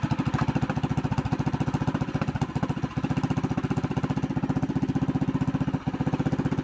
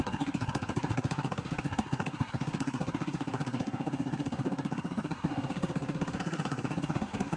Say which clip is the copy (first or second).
second